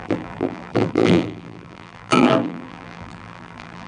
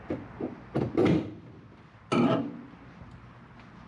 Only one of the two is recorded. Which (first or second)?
second